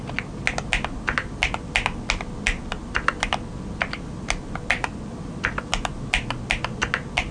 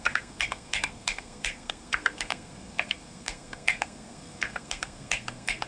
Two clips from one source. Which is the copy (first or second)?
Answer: second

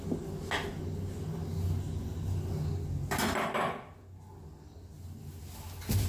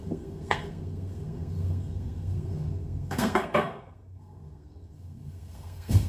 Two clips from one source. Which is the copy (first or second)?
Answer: second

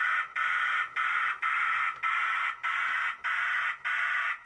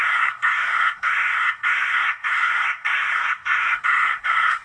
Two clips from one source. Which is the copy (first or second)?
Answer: second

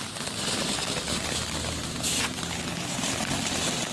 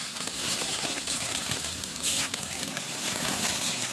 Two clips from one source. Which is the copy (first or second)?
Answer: second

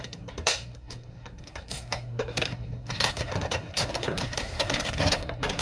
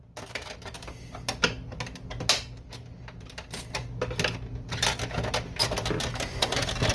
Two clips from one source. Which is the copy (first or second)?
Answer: first